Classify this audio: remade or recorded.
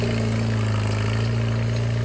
recorded